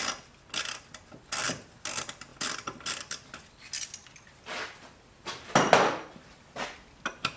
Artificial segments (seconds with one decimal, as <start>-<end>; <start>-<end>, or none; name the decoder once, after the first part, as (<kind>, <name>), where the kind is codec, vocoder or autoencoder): 2.3-3.6 (vocoder, BigVGAN v2); 4.0-6.3